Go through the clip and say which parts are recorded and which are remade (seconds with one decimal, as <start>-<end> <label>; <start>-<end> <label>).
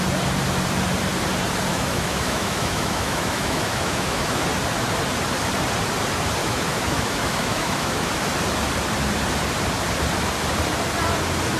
0.0-1.7 recorded; 1.7-4.4 remade; 4.4-6.4 recorded; 6.4-8.1 remade; 8.1-11.6 recorded